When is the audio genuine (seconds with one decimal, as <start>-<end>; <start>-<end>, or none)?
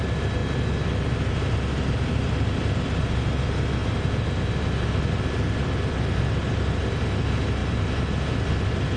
0.0-9.0